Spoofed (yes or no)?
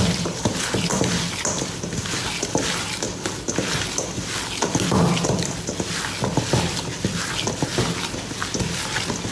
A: no